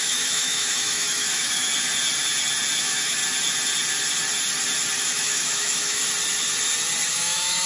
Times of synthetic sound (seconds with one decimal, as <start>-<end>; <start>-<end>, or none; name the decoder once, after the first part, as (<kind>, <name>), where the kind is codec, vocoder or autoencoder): 0.0-1.7 (autoencoder, DAC-VAE); 2.8-3.2; 5.0-6.0; 7.1-7.7